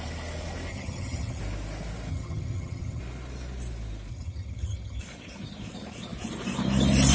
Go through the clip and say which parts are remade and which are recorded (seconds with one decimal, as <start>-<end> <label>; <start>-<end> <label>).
0.0-0.7 recorded; 0.7-1.4 remade; 1.4-2.1 recorded; 2.1-3.0 remade; 3.0-4.1 recorded; 4.1-5.0 remade; 5.0-7.1 recorded